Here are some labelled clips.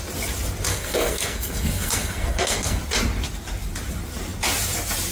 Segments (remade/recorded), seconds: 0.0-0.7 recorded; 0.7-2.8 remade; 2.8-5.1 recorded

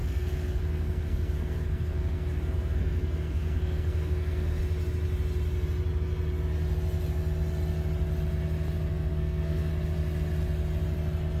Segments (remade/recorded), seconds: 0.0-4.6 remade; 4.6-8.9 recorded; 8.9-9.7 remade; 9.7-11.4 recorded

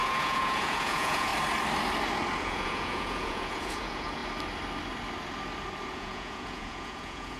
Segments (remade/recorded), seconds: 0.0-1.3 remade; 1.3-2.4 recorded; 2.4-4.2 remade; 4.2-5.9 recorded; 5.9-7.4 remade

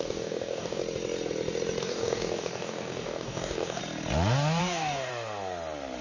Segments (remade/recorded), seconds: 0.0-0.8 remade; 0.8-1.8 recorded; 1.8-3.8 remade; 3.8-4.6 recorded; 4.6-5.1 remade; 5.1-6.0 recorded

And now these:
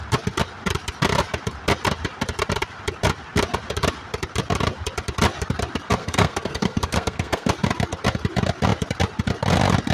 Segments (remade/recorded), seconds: 0.0-6.0 recorded; 6.0-7.5 remade; 7.5-9.9 recorded